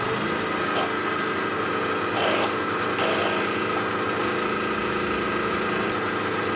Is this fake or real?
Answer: real